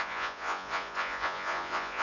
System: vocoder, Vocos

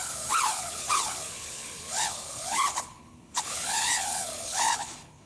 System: codec, HILCodec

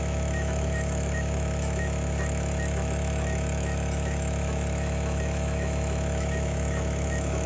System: autoencoder, DAC-VAE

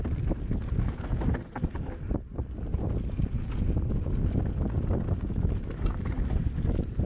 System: none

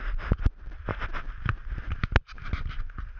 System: none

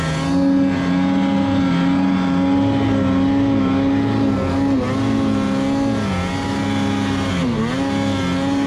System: none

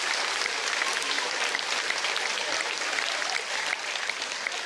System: none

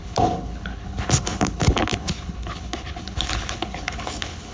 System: codec, HILCodec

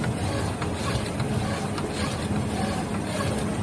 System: none